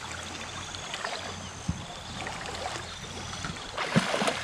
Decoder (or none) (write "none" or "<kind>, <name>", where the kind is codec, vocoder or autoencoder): none